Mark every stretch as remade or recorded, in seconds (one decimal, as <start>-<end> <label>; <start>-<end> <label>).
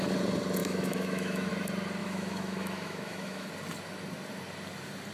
0.0-0.6 recorded; 0.6-1.5 remade; 1.5-2.0 recorded; 2.0-3.5 remade; 3.5-5.1 recorded